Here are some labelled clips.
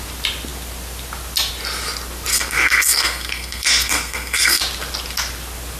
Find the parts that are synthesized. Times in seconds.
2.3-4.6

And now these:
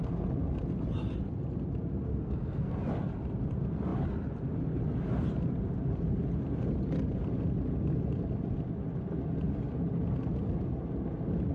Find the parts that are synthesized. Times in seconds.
2.1-2.8

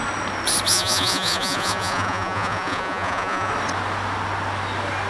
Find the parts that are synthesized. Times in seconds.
0.7-3.5

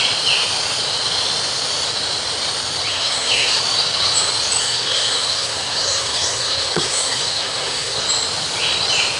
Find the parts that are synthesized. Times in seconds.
2.9-3.6; 4.6-8.0

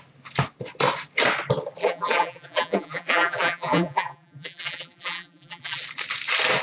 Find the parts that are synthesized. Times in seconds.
1.8-5.8

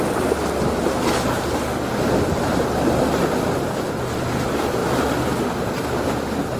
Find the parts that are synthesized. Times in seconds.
none

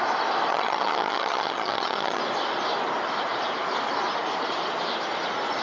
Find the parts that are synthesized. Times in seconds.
0.5-2.2